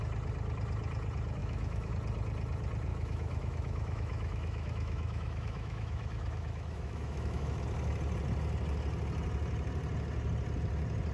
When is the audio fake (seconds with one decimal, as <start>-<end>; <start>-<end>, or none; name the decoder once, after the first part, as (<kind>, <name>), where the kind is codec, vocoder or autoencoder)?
1.4-1.9 (autoencoder, DAC-VAE); 2.9-7.6